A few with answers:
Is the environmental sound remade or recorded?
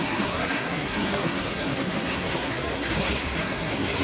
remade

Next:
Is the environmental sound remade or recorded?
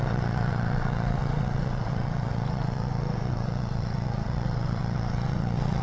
remade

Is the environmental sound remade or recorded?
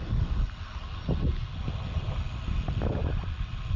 recorded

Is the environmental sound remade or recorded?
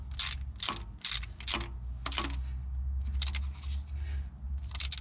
recorded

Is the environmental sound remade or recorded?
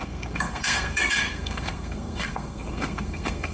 remade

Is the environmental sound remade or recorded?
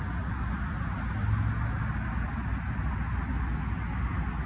recorded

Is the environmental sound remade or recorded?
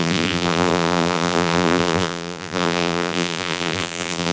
remade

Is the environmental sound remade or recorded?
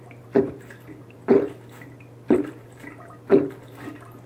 remade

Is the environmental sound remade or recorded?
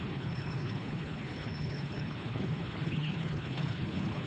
remade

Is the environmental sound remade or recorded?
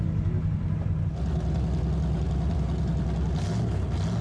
recorded